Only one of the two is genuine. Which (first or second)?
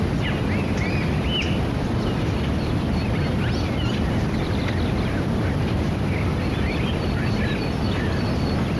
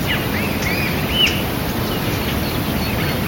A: second